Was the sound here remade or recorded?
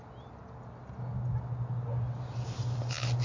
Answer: recorded